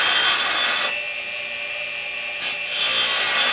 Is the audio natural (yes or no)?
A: yes